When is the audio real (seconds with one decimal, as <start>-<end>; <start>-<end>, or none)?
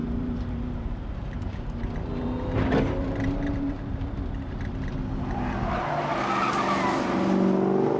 4.2-8.0